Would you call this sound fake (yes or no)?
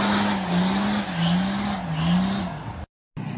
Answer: no